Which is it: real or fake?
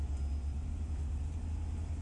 real